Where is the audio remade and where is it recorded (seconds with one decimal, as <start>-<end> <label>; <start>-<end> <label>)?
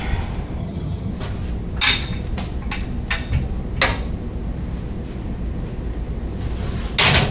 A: 0.0-0.6 recorded; 0.6-1.1 remade; 1.1-7.3 recorded